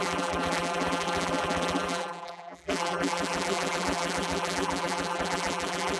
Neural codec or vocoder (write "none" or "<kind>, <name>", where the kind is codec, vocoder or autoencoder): vocoder, BigVGAN v2